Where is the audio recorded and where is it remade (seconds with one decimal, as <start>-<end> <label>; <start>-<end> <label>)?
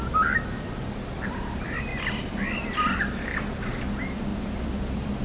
0.0-1.9 recorded; 1.9-3.8 remade; 3.8-4.3 recorded; 4.3-5.2 remade